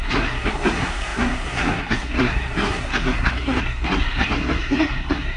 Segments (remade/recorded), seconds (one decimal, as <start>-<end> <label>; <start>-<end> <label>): 0.0-5.4 remade